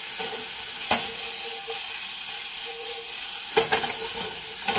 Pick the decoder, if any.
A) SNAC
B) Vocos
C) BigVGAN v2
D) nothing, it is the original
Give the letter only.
D